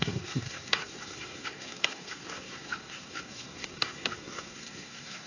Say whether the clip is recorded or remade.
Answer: remade